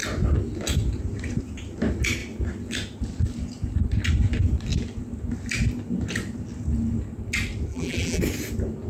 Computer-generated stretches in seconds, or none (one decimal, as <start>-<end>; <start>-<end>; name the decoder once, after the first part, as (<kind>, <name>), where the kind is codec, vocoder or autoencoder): 7.7-8.2 (vocoder, BigVGAN v2)